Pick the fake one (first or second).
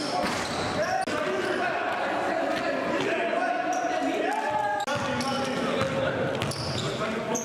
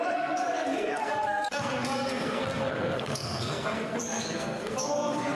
second